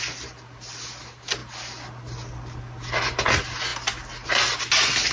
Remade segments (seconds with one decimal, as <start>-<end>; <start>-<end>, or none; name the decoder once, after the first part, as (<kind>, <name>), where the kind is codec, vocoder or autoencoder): none

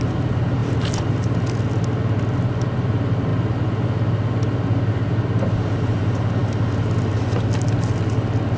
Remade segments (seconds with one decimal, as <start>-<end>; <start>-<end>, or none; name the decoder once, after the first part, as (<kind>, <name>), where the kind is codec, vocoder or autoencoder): none